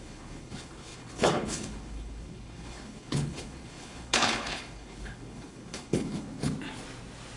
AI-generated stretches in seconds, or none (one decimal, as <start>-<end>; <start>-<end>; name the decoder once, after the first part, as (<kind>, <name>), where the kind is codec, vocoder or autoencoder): 0.0-6.5 (codec, HILCodec)